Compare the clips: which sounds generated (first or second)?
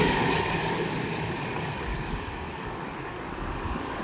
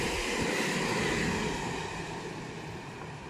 first